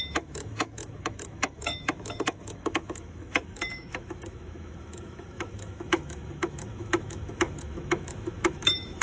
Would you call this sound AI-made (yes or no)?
yes